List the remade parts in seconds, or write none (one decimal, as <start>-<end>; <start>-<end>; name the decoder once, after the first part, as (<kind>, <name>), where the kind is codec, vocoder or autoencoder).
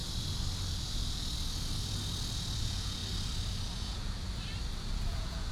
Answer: 2.6-3.0 (vocoder, Vocos); 3.7-4.2; 4.9-5.5